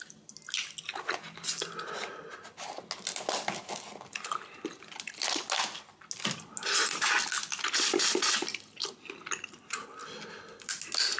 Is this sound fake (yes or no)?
no